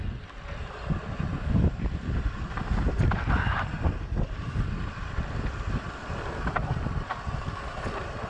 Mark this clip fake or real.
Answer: real